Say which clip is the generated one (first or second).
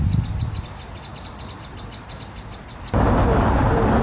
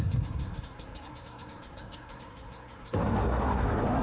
second